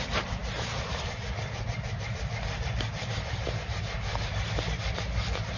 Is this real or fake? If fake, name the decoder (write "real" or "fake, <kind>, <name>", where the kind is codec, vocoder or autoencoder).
fake, vocoder, BigVGAN v2